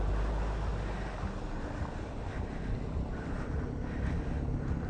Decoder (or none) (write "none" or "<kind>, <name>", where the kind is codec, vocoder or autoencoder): none